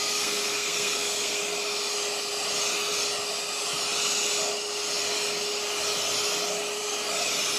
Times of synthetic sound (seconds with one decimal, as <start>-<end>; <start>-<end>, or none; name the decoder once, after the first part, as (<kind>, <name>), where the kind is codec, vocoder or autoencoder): 0.0-1.4 (codec, SNAC)